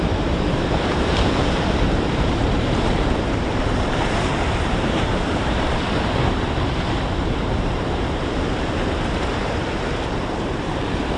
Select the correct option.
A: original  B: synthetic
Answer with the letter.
B